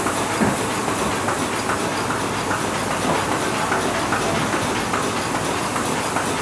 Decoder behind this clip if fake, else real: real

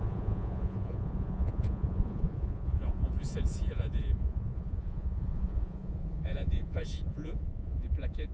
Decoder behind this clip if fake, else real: fake, vocoder, Vocos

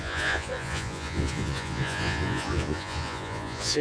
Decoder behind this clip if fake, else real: fake, vocoder, Vocos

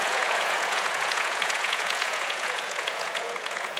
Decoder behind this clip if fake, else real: fake, vocoder, Vocos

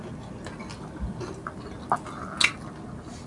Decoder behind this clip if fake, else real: real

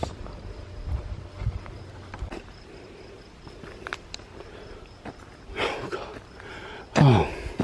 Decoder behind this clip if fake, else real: real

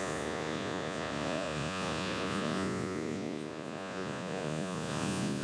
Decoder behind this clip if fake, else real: fake, vocoder, Vocos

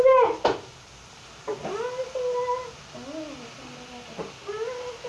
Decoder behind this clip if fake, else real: real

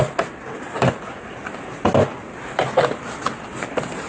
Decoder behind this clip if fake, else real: real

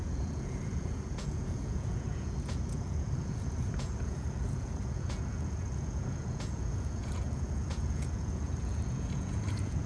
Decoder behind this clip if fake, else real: fake, vocoder, Vocos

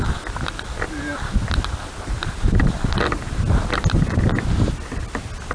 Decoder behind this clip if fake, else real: real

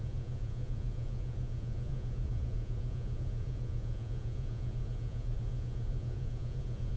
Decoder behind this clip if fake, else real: fake, vocoder, Vocos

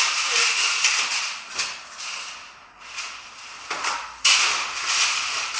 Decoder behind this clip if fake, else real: real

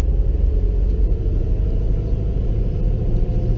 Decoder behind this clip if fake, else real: real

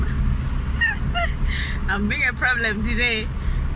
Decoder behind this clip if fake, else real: real